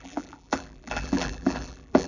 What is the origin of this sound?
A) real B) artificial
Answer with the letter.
B